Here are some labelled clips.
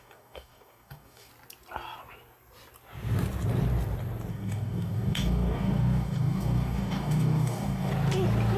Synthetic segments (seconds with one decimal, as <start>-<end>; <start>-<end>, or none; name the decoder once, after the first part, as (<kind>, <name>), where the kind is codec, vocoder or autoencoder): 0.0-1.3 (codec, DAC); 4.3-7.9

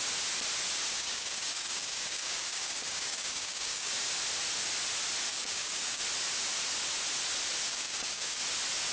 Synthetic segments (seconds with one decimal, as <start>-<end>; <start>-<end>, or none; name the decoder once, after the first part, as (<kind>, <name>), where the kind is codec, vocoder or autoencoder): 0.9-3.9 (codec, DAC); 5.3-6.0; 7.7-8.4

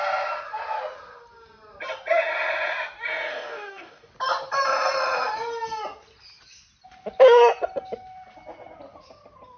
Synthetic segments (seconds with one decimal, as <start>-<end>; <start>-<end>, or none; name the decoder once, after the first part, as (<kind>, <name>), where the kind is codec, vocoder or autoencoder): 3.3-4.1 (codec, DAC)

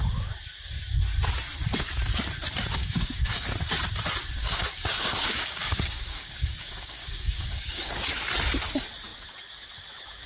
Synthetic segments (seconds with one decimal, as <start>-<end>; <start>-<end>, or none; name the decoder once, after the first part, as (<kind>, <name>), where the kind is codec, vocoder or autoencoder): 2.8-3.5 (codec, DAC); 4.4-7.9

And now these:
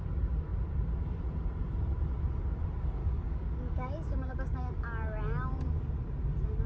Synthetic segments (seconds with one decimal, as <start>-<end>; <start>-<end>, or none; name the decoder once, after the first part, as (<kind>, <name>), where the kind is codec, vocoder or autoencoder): 3.0-4.7 (codec, DAC)